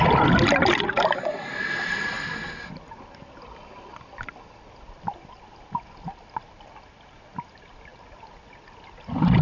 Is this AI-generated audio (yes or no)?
no